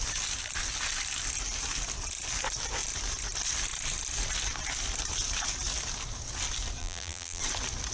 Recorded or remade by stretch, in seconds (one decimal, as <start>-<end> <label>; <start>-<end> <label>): 0.0-6.8 recorded; 6.8-7.4 remade; 7.4-7.9 recorded